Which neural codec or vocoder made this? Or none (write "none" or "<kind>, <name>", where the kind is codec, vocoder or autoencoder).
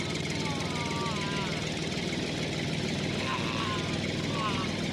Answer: none